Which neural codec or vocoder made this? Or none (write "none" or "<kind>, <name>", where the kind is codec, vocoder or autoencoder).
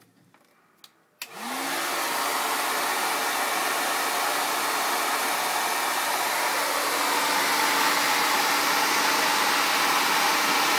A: none